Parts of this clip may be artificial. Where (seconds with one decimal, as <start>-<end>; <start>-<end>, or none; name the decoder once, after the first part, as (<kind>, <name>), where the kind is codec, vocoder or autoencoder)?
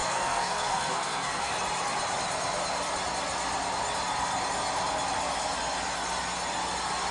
0.0-1.5 (codec, SNAC)